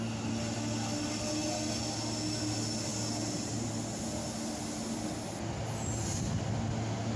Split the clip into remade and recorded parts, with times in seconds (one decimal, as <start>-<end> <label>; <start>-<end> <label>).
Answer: 0.0-7.2 recorded

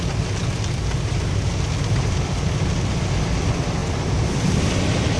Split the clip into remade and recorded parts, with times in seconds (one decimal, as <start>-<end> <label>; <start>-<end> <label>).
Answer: 0.0-5.2 recorded

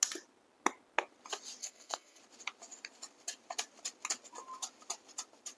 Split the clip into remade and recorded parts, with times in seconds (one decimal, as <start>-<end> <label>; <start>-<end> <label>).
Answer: 0.0-1.6 recorded; 1.6-2.2 remade; 2.2-5.6 recorded

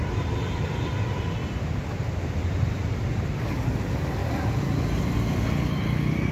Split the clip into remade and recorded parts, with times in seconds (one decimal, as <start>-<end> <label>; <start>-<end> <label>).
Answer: 0.0-2.8 remade; 2.8-3.5 recorded; 3.5-4.2 remade; 4.2-6.3 recorded